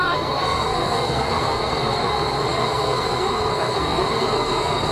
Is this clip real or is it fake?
fake